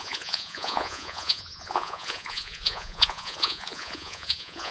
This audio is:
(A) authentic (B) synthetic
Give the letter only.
B